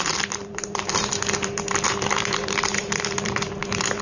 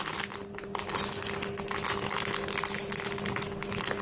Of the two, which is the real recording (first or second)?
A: second